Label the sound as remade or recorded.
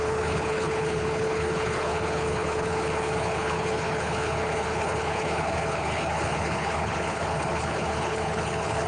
remade